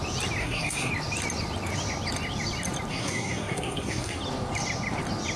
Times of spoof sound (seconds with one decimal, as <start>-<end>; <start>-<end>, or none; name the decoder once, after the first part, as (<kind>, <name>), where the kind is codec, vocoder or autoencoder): 0.4-0.9 (codec, SNAC); 2.9-4.2